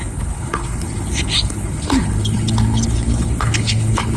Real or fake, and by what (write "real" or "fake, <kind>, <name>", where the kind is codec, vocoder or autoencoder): fake, codec, HILCodec